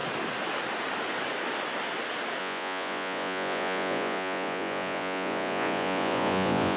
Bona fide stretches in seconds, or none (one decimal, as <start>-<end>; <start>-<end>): 0.0-2.4

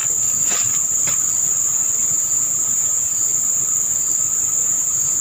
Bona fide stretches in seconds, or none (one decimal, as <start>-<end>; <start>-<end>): 0.0-2.0; 3.2-4.6

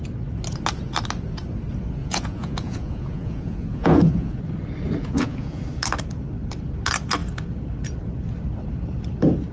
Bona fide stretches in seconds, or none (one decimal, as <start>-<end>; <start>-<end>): 0.0-2.0; 4.4-5.0; 5.6-9.5

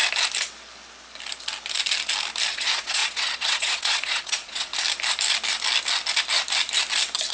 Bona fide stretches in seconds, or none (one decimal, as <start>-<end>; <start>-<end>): 0.0-2.5; 4.7-7.3

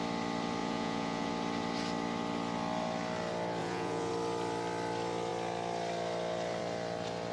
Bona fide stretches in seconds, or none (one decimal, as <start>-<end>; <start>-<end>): 0.0-0.6; 1.3-3.6; 4.1-7.3

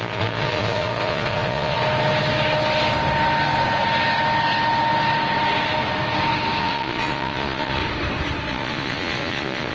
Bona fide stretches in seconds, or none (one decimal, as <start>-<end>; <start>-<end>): 1.8-6.6; 7.8-8.5